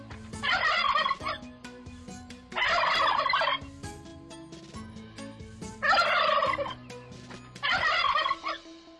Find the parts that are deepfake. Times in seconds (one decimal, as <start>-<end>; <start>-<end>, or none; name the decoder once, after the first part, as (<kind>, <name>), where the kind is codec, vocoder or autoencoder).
0.0-4.1 (vocoder, BigVGAN v2); 6.4-9.0